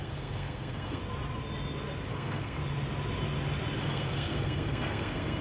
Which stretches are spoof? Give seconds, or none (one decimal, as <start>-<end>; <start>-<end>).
0.0-1.0; 2.1-2.6; 3.8-5.4